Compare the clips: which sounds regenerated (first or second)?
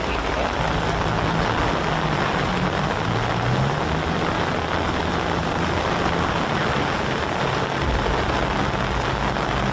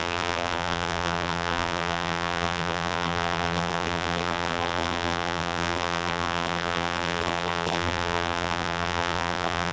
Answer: second